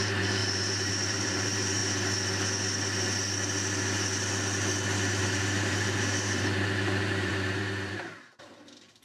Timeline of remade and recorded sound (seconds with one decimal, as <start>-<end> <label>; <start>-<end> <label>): 0.0-1.8 remade; 1.8-5.2 recorded; 5.2-9.0 remade